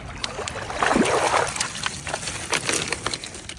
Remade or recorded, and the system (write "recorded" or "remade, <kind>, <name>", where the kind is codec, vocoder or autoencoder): recorded